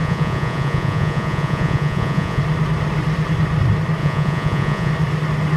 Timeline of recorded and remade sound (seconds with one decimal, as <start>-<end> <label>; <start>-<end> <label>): 0.0-2.4 remade; 2.4-4.0 recorded; 4.0-4.9 remade; 4.9-5.6 recorded